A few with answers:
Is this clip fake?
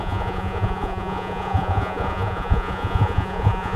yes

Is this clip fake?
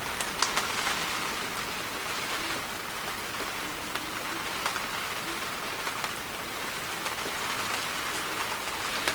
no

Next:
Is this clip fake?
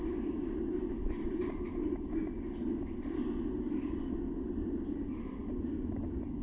no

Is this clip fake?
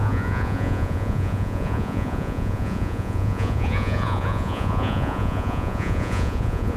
yes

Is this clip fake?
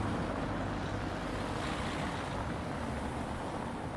no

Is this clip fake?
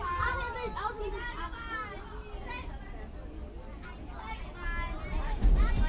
no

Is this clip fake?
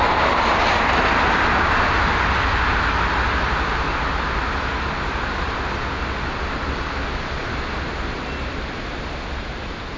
no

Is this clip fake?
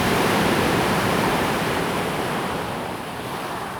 yes